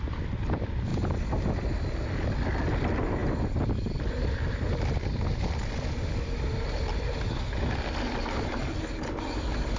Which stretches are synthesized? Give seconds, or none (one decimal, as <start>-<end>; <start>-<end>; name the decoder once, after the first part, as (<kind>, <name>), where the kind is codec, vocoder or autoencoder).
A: none